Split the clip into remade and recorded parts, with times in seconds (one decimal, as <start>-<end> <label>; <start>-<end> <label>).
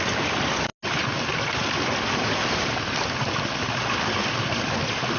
0.0-5.2 recorded